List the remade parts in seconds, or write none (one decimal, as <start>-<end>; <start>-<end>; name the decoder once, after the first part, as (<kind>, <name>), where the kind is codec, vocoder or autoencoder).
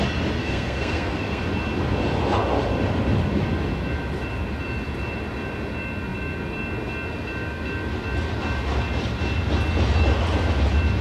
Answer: 0.4-1.4 (codec, SNAC)